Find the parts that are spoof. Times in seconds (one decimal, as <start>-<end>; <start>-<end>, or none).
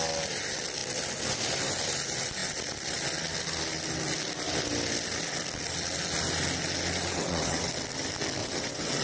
7.1-7.7; 8.4-9.0